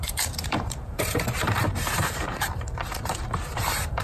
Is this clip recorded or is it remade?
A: remade